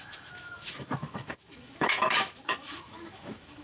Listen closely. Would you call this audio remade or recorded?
remade